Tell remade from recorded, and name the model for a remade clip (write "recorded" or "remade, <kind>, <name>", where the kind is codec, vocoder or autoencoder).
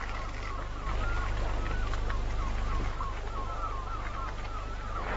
recorded